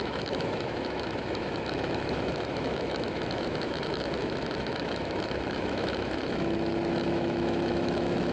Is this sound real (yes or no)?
no